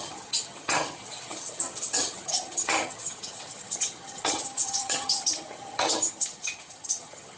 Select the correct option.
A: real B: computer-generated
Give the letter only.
B